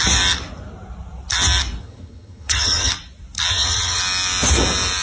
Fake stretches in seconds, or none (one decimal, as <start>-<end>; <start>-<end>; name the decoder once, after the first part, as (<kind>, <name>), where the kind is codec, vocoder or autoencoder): 1.8-2.9 (vocoder, HiFi-GAN); 3.5-4.0